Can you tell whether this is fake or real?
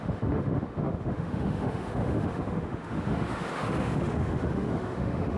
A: fake